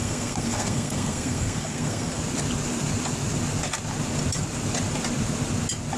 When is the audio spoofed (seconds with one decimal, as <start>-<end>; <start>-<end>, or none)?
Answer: 0.0-2.2